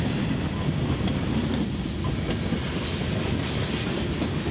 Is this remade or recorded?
recorded